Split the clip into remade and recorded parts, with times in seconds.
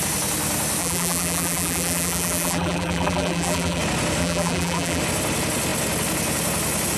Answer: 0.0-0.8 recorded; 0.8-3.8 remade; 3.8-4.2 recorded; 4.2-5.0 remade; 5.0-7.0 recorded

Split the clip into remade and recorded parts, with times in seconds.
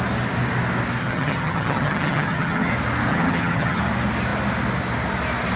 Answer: 0.0-1.0 recorded; 1.0-2.7 remade; 2.7-3.1 recorded; 3.1-3.8 remade; 3.8-5.6 recorded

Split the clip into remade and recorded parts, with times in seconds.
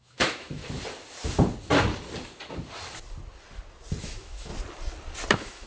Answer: 0.0-0.6 remade; 0.6-4.0 recorded; 4.0-4.5 remade; 4.5-5.3 recorded; 5.3-5.7 remade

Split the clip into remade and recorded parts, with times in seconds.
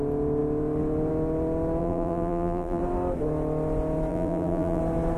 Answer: 0.0-1.8 recorded; 1.8-2.8 remade; 2.8-4.1 recorded; 4.1-4.8 remade; 4.8-5.2 recorded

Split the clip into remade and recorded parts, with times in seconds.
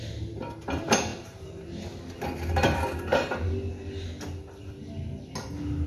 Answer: 0.0-5.9 recorded